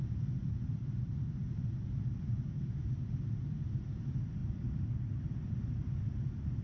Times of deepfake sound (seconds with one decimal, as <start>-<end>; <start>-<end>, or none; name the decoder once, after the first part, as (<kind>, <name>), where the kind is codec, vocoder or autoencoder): 0.0-1.4 (vocoder, BigVGAN v2); 1.9-4.4; 5.1-6.6